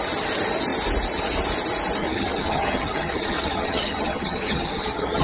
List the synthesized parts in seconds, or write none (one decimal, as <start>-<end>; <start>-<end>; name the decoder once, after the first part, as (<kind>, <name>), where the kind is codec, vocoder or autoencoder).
2.0-5.2 (vocoder, HiFi-GAN)